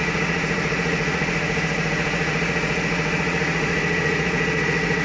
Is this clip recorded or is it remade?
remade